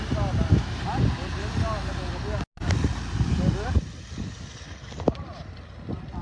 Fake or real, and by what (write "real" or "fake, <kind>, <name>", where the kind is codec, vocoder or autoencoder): real